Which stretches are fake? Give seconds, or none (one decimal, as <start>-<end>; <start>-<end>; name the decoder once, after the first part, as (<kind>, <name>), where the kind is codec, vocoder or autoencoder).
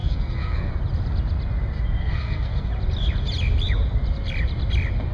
0.0-0.7 (codec, SNAC); 2.0-2.7